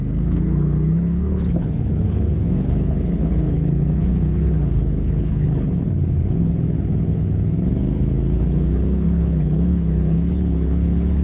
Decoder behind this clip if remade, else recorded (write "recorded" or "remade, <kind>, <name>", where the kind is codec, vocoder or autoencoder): remade, codec, HILCodec